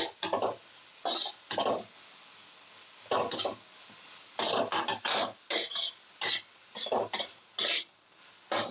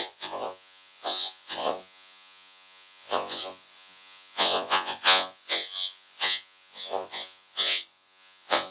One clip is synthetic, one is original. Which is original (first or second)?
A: first